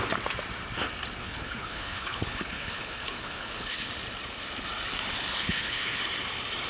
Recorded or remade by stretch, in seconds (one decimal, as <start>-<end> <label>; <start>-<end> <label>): 0.0-1.2 recorded; 1.2-3.9 remade; 3.9-5.3 recorded; 5.3-6.0 remade; 6.0-6.7 recorded